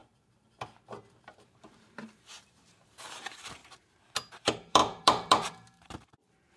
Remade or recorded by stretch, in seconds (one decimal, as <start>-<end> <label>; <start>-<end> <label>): 0.0-1.2 recorded; 1.2-3.6 remade; 3.6-4.3 recorded; 4.3-6.6 remade